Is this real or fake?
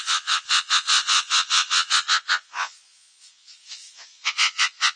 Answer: fake